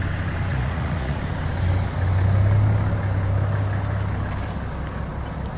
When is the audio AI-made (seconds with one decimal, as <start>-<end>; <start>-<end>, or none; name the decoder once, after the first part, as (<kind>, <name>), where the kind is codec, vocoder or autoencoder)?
0.5-1.2 (vocoder, Vocos)